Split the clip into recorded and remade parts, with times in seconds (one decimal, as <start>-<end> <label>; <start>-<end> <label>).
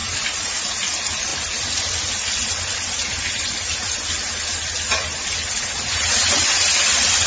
0.0-0.6 remade; 0.6-7.3 recorded